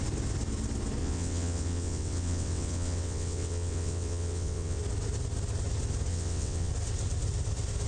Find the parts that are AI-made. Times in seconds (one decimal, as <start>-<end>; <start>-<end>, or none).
1.0-4.8; 6.1-6.7